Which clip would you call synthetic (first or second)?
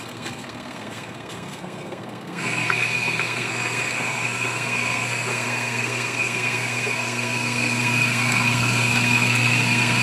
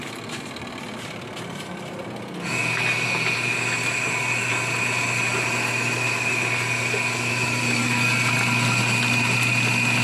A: first